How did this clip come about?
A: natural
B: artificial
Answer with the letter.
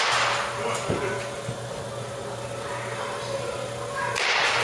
A